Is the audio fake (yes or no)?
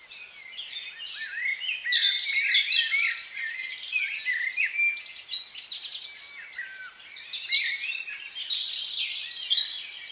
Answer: no